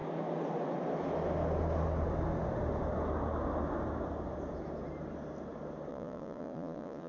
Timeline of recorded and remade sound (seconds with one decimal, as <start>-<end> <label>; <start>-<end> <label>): 0.0-5.9 recorded; 5.9-7.1 remade